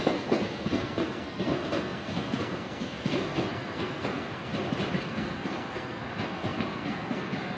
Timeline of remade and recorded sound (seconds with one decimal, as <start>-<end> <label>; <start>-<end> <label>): 0.0-4.5 remade; 4.5-5.0 recorded; 5.0-7.6 remade